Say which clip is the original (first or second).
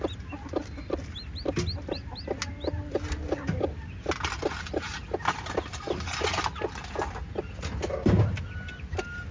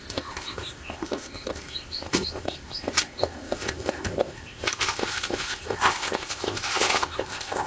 first